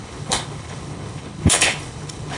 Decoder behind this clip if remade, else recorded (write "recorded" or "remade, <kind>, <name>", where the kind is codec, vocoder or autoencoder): remade, codec, HILCodec